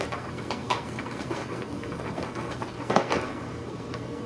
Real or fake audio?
fake